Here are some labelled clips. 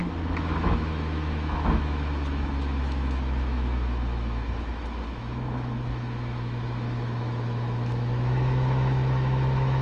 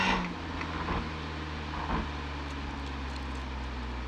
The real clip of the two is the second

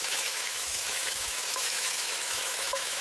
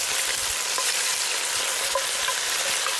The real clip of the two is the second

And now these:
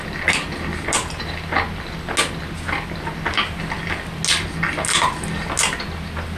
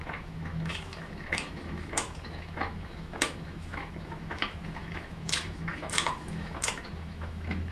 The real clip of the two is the first